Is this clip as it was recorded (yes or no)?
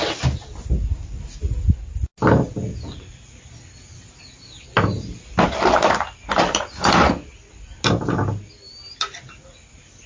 yes